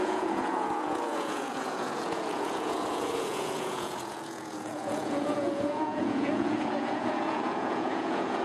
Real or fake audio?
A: fake